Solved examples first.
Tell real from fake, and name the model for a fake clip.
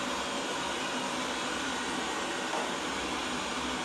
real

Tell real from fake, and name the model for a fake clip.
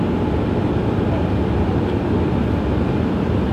real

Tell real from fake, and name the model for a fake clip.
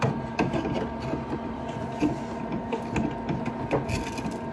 real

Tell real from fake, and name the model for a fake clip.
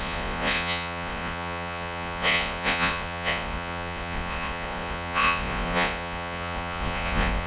fake, vocoder, Vocos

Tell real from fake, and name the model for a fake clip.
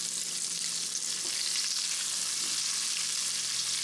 real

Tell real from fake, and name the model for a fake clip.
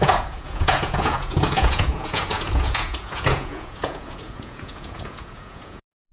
fake, vocoder, Vocos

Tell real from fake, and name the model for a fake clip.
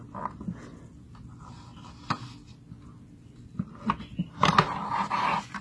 real